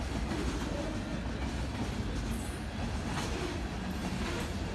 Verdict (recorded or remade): recorded